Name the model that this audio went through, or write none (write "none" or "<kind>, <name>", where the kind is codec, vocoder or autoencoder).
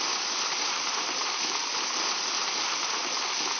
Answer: vocoder, BigVGAN v2